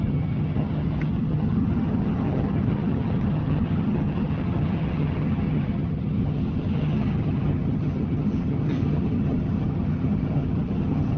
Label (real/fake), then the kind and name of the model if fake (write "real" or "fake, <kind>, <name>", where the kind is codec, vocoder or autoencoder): fake, vocoder, HiFi-GAN